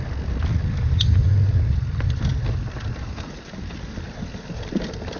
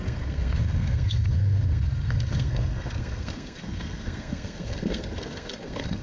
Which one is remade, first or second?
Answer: second